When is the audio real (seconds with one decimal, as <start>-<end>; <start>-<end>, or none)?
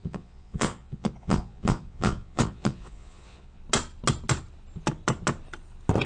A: 3.6-6.1